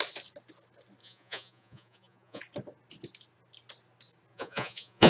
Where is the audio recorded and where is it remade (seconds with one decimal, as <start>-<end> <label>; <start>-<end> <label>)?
0.0-1.0 recorded; 1.0-2.4 remade; 2.4-4.3 recorded; 4.3-5.1 remade